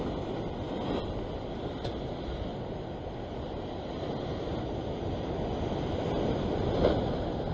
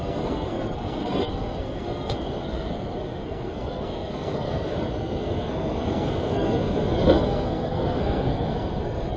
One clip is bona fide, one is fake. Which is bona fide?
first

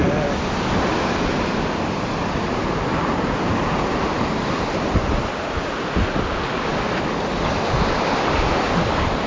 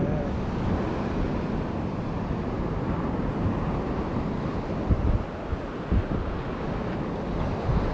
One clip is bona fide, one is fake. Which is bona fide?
second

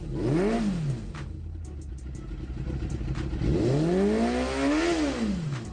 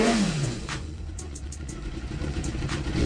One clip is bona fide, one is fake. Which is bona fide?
first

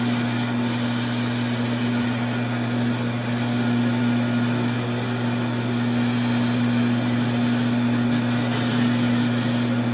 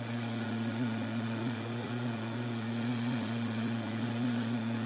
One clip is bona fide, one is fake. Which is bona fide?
first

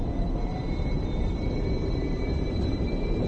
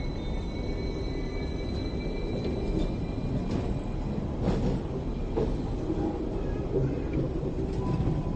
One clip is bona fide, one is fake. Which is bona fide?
second